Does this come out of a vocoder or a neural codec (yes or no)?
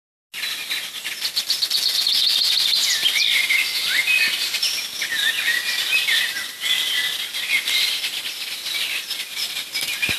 no